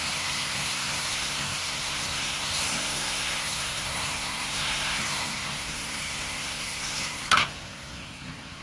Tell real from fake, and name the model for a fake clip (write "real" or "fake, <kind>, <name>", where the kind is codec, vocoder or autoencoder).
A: fake, codec, SNAC